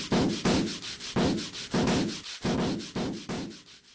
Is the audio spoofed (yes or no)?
no